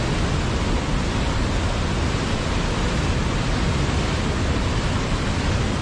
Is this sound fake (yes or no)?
no